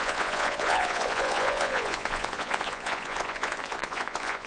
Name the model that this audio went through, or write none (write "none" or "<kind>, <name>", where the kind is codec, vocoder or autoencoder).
vocoder, Vocos